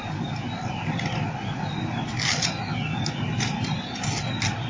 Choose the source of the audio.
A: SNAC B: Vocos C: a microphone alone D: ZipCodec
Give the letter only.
C